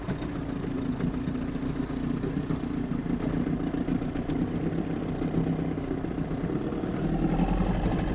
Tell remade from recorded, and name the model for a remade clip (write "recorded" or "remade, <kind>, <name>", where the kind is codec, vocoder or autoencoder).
recorded